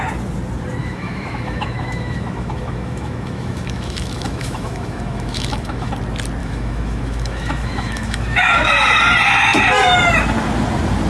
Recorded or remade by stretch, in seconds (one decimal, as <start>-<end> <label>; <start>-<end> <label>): 0.0-0.8 recorded; 0.8-5.9 remade; 5.9-6.4 recorded; 6.4-8.7 remade; 8.7-11.1 recorded